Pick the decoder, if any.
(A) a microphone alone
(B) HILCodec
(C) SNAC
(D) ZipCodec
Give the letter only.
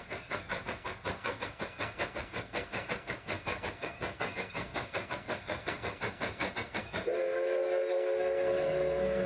C